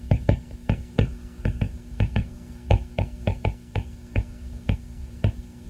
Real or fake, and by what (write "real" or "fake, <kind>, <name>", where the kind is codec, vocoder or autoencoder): fake, codec, SNAC